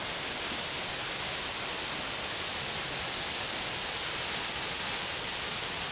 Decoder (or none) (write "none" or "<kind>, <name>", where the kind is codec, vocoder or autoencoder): none